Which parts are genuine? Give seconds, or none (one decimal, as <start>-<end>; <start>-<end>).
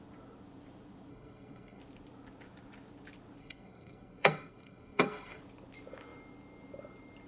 0.0-1.1; 1.8-3.4; 5.4-7.3